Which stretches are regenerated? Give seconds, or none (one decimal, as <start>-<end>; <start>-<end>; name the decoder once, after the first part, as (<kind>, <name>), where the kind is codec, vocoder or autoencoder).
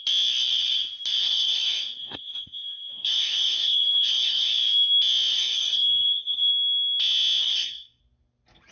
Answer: 1.2-4.5 (codec, DAC); 5.3-6.5; 7.4-8.0